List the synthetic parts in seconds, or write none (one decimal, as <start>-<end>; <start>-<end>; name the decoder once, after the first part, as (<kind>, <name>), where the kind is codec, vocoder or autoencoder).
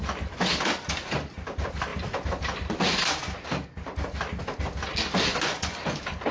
5.3-5.8 (vocoder, Vocos)